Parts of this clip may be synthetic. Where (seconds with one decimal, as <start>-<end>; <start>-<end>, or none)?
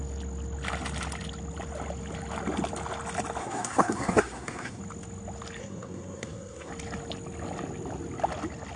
3.4-4.8; 5.6-6.7